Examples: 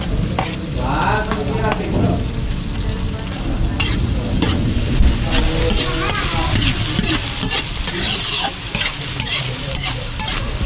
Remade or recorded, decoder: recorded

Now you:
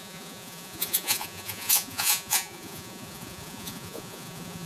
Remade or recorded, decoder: remade, vocoder, Vocos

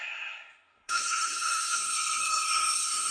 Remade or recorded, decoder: remade, codec, SNAC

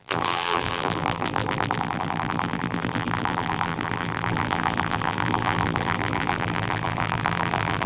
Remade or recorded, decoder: remade, vocoder, BigVGAN v2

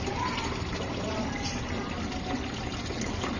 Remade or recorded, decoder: recorded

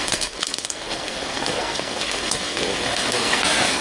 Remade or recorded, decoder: remade, codec, SNAC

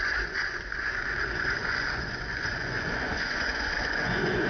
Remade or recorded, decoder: remade, vocoder, Vocos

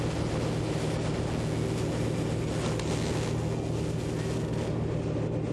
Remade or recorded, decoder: recorded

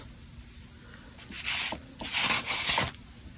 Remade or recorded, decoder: recorded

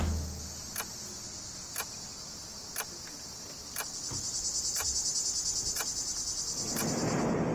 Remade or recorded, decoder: recorded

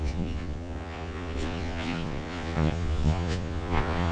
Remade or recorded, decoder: remade, vocoder, Vocos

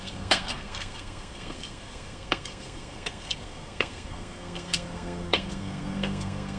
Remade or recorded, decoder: remade, codec, SNAC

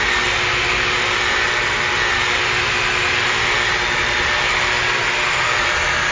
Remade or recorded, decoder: recorded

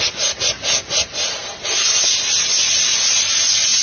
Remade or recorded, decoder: recorded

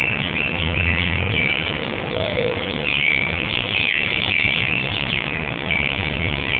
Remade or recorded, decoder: remade, vocoder, WaveNeXt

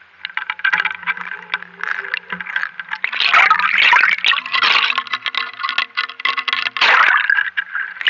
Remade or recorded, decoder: recorded